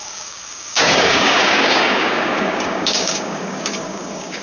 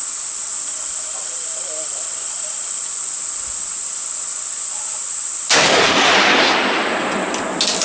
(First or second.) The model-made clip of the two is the first